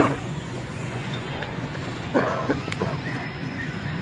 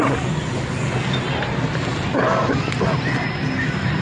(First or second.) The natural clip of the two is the second